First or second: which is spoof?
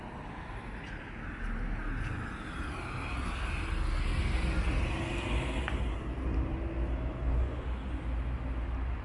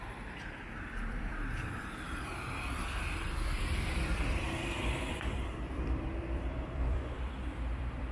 second